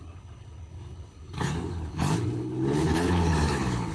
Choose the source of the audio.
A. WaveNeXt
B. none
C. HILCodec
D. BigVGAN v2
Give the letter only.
C